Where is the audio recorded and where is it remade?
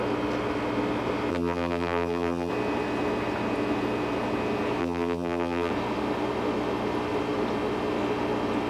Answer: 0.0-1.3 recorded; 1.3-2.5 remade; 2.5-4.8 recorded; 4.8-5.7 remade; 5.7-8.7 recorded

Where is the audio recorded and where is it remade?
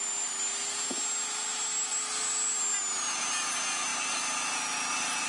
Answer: 0.0-5.3 recorded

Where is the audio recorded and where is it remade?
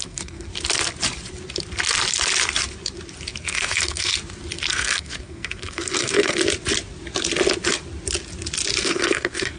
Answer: 0.0-0.5 remade; 0.5-3.4 recorded; 3.4-4.1 remade; 4.1-4.7 recorded; 4.7-6.4 remade; 6.4-8.8 recorded; 8.8-9.6 remade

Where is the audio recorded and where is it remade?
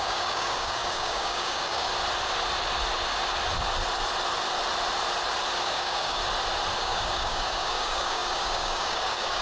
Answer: 0.0-1.9 remade; 1.9-5.6 recorded; 5.6-6.2 remade; 6.2-6.8 recorded; 6.8-9.4 remade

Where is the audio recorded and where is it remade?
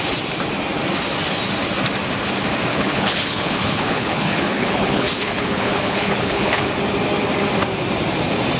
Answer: 0.0-2.7 recorded; 2.7-6.7 remade; 6.7-8.6 recorded